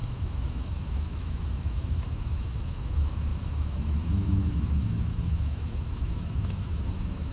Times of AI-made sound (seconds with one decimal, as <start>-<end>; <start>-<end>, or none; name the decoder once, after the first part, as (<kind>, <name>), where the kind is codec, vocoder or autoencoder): 0.0-7.3 (autoencoder, DAC-VAE)